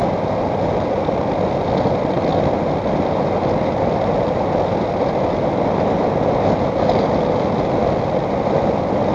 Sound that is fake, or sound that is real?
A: real